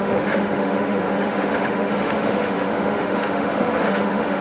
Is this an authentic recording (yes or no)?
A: no